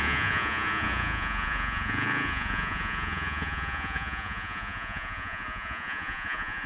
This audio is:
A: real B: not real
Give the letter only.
B